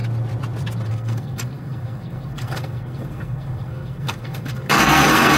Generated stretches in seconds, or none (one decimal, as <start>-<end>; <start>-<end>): 0.9-5.4